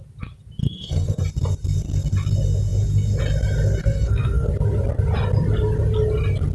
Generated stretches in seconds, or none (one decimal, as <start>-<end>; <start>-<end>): 0.6-1.2; 3.8-4.5